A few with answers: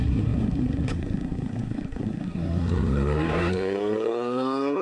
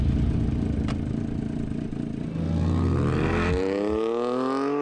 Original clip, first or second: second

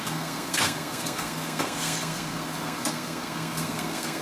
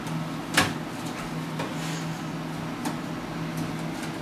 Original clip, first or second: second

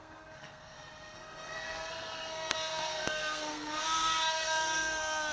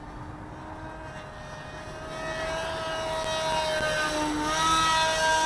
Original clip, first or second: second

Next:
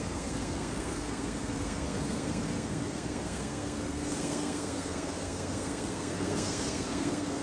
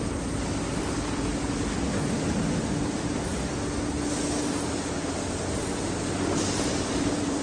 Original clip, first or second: second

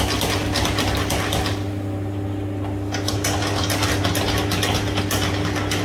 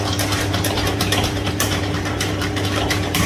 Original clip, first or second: first